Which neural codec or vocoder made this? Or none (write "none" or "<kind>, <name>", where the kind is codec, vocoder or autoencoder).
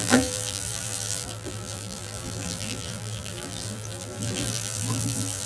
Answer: vocoder, BigVGAN v2